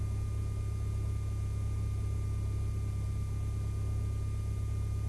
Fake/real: real